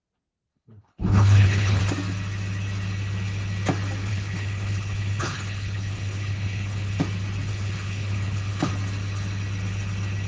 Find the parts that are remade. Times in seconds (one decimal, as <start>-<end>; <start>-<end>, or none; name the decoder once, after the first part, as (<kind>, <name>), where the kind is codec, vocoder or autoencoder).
0.5-1.8 (codec, HILCodec); 4.1-7.0; 7.5-8.7